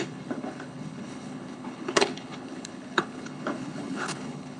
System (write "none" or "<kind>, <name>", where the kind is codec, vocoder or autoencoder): codec, HILCodec